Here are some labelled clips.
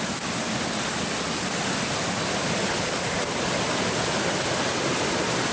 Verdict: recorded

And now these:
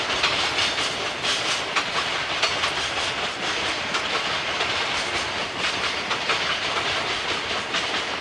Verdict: recorded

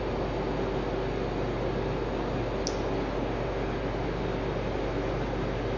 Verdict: recorded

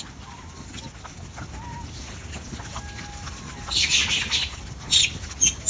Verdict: recorded